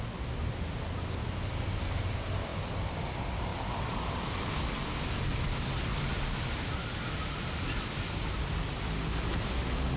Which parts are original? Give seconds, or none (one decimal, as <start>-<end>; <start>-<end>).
0.0-10.0

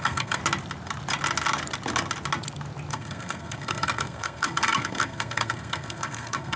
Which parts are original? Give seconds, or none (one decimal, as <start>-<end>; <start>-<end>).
0.4-2.9

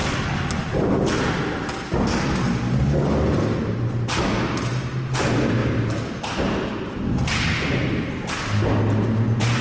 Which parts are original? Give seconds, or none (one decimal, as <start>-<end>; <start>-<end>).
0.0-9.6

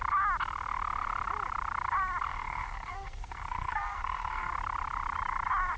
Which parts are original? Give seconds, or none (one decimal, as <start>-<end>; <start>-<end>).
0.0-2.3; 4.5-5.8

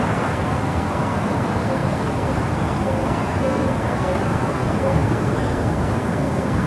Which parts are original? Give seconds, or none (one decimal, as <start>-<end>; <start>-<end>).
none